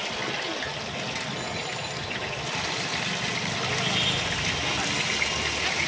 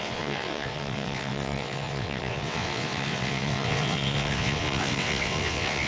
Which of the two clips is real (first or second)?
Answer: first